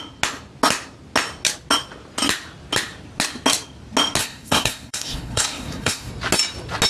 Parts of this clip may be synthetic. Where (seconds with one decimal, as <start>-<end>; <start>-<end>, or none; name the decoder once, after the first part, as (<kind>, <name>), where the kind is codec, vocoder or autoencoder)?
4.2-6.1 (codec, SNAC)